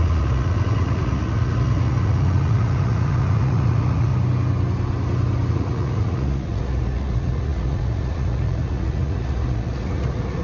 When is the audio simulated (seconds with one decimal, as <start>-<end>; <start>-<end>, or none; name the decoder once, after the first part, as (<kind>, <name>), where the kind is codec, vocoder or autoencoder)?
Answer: 0.0-4.1 (vocoder, Vocos); 5.5-10.4